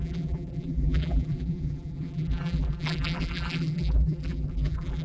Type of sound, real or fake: fake